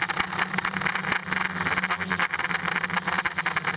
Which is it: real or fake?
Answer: real